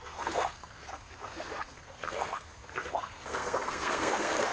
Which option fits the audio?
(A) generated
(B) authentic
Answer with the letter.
A